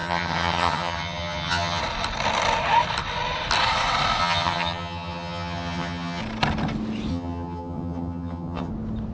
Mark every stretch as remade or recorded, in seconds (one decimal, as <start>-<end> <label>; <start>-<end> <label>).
0.0-1.8 remade; 1.8-4.2 recorded; 4.2-6.2 remade; 6.2-7.1 recorded; 7.1-8.7 remade; 8.7-9.1 recorded

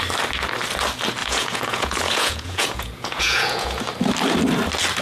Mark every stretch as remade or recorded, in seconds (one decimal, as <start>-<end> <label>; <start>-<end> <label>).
0.0-1.2 recorded; 1.2-3.8 remade; 3.8-5.0 recorded

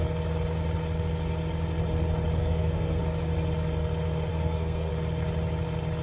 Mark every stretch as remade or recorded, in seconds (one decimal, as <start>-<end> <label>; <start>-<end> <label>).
0.0-2.4 recorded; 2.4-3.0 remade; 3.0-4.3 recorded; 4.3-4.9 remade; 4.9-6.0 recorded